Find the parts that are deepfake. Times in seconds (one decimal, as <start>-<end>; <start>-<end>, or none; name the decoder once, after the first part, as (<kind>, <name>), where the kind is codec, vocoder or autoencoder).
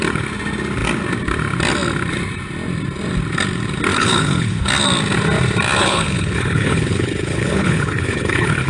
3.9-4.7 (codec, HILCodec); 5.8-8.7